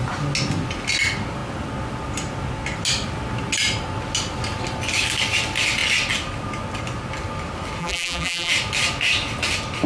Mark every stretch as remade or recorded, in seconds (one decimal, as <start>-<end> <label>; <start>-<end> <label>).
0.0-7.8 recorded; 7.8-8.5 remade; 8.5-9.9 recorded